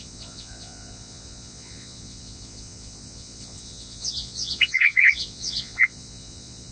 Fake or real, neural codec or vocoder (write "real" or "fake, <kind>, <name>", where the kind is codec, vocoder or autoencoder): fake, vocoder, Vocos